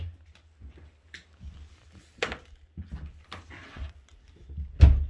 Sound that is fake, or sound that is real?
real